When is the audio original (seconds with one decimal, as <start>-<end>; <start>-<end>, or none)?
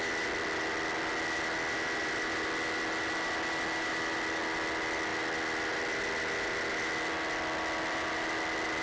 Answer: 0.0-8.8